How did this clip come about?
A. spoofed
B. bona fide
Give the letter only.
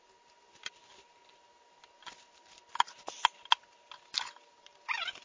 B